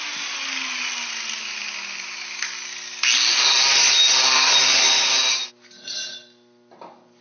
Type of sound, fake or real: real